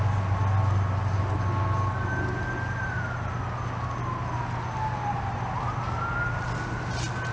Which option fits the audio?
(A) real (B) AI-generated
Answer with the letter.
A